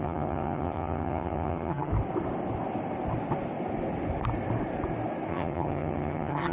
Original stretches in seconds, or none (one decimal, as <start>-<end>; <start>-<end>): 1.9-5.3